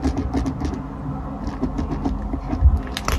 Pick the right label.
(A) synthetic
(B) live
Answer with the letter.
B